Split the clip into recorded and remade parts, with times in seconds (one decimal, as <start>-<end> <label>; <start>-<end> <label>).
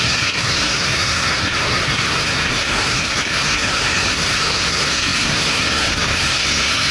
0.0-6.9 remade